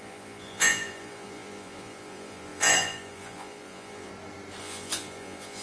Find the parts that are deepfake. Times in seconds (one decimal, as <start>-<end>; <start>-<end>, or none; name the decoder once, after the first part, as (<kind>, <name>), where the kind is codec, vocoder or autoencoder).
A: 0.0-4.1 (vocoder, Vocos); 4.6-5.6